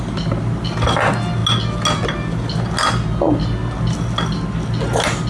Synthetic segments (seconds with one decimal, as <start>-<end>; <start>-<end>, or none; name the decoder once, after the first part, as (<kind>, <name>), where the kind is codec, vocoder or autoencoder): none